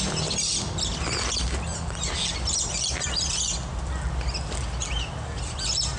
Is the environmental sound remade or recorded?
recorded